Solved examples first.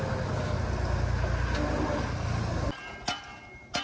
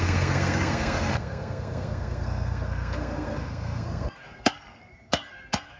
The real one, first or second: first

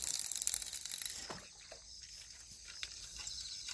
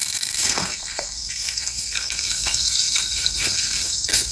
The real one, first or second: first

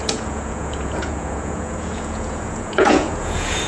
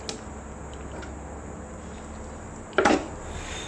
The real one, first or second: second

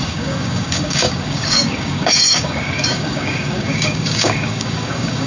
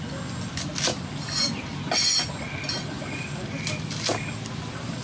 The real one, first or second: second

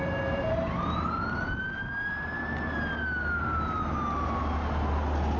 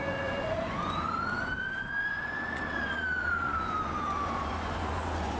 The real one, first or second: first